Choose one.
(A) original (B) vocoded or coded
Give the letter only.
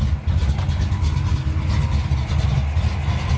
A